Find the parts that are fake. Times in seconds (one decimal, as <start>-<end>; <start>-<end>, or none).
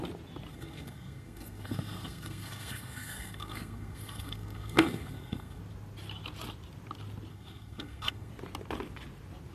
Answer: 0.5-5.6; 7.3-8.3